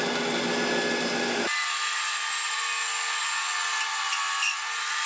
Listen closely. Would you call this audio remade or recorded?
recorded